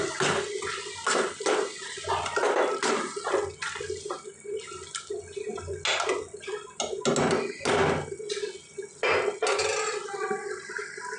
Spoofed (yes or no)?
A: no